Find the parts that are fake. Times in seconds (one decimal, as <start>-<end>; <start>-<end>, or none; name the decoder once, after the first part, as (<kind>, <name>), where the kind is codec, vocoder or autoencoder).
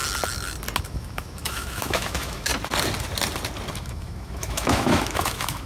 0.8-2.5 (autoencoder, DAC-VAE); 3.7-5.7